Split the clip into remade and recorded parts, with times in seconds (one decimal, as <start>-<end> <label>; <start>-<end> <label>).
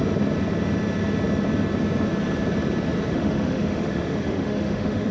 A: 0.0-3.1 recorded; 3.1-5.1 remade